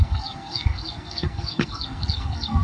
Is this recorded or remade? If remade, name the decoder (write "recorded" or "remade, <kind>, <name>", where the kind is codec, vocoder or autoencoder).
remade, codec, SNAC